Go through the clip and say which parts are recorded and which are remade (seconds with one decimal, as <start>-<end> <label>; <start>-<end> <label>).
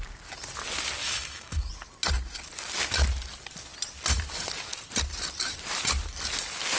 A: 0.0-1.0 recorded; 1.0-1.7 remade; 1.7-6.8 recorded